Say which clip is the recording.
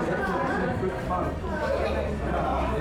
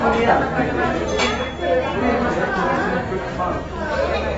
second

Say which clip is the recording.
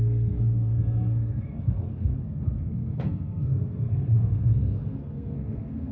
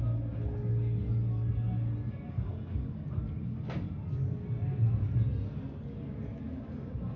second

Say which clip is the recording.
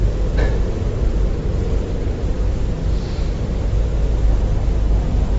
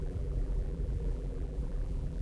first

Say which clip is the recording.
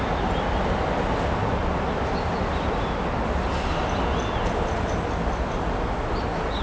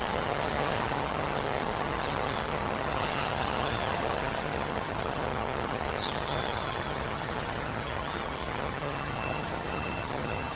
first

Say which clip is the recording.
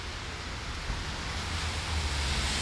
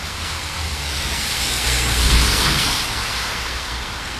first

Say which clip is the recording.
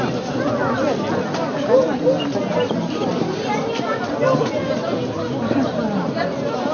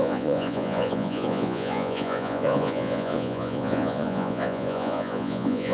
first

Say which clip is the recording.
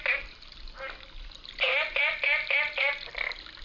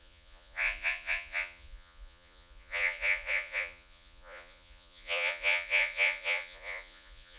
first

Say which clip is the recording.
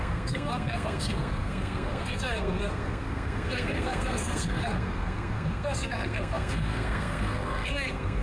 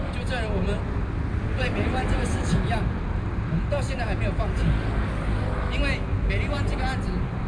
second